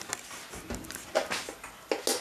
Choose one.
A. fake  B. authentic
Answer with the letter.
B